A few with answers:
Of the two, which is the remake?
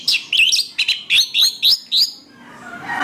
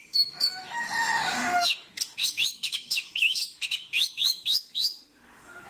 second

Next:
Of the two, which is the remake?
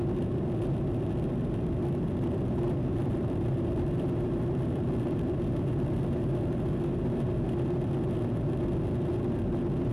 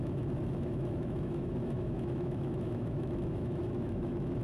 second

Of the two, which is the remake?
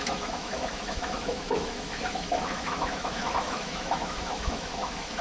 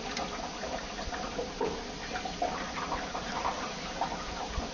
first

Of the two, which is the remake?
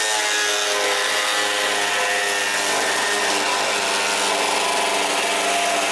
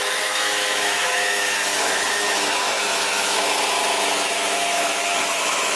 second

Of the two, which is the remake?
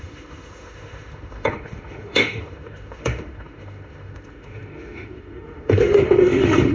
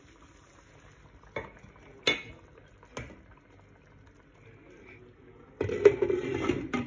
first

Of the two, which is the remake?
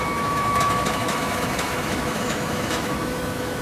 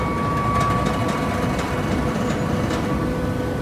first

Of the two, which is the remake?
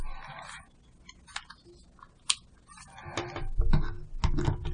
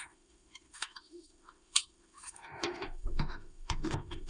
second